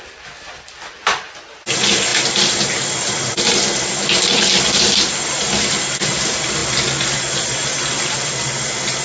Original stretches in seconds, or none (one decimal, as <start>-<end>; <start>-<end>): 0.0-9.0